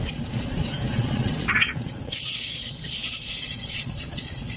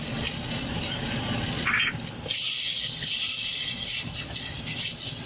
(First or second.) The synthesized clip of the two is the first